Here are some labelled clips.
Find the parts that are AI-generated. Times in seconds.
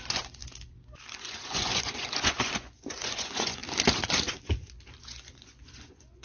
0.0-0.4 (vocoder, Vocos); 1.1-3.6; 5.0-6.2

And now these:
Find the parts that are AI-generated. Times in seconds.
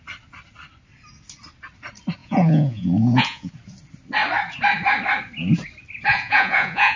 2.2-3.5 (vocoder, Vocos); 6.1-7.0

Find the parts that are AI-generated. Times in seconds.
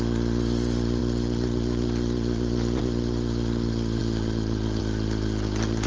none